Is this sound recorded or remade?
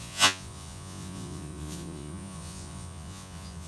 remade